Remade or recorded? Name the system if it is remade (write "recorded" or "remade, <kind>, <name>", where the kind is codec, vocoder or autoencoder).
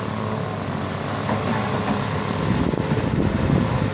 recorded